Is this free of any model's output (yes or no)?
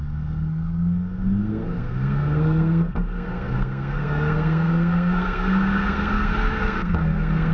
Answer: no